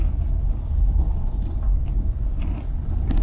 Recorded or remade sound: recorded